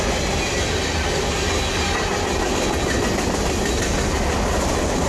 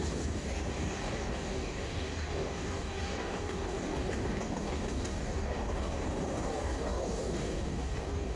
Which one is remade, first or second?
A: second